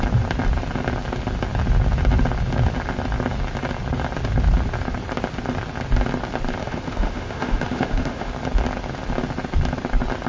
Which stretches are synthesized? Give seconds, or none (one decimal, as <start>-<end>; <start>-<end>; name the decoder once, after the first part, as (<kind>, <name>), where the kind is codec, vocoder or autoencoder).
6.6-8.3 (autoencoder, DAC-VAE)